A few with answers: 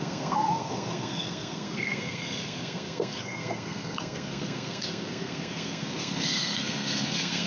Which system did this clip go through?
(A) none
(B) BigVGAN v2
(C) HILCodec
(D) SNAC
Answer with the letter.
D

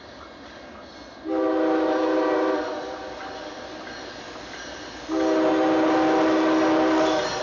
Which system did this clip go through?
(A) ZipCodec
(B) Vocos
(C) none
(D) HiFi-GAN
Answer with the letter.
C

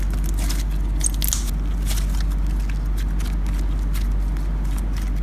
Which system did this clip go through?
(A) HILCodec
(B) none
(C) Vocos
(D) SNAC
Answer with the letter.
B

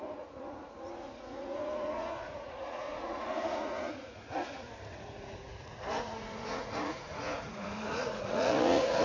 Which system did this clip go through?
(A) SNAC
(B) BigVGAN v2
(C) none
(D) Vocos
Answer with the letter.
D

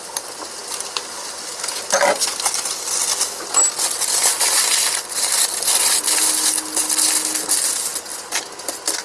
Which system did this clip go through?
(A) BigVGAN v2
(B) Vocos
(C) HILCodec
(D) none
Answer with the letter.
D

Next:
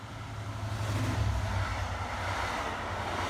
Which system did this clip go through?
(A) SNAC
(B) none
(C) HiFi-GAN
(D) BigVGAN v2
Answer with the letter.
B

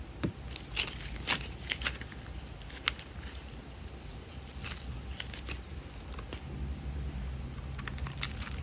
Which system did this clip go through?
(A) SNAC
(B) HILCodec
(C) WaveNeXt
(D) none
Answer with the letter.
D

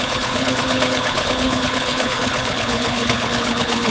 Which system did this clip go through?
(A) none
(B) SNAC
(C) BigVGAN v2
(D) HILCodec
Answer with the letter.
D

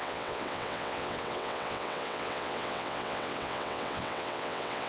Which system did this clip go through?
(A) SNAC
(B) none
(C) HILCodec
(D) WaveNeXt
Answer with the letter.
D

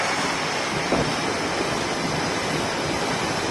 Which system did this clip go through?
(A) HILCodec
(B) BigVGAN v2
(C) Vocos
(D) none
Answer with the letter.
B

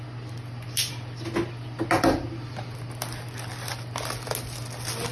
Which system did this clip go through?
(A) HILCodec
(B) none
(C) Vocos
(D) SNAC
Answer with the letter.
B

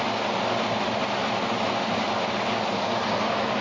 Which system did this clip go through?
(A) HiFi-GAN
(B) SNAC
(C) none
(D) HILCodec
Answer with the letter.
C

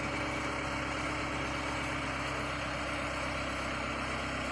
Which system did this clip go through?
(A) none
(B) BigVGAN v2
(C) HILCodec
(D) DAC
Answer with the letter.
A